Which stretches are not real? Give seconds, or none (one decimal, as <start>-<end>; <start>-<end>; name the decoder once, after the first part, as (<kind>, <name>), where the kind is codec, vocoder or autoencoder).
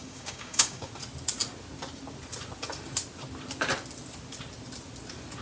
0.0-0.9 (codec, DAC)